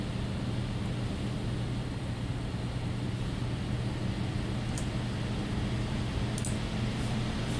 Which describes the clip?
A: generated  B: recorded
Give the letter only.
B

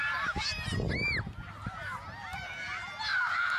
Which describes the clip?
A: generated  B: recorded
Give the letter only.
B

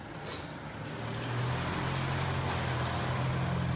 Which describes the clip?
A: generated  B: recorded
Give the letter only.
B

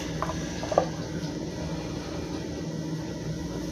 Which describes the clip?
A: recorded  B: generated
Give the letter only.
A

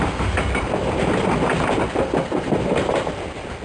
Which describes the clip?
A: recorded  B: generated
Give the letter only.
A